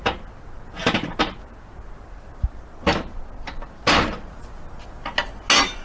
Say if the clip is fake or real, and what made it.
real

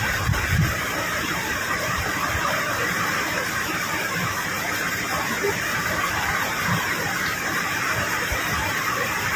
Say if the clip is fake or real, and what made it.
fake, vocoder, BigVGAN v2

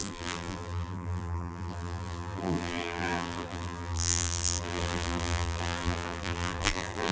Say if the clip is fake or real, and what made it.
fake, vocoder, BigVGAN v2